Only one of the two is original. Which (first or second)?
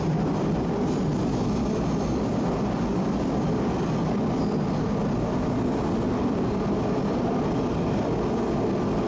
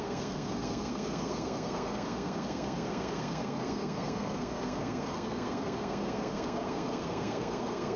first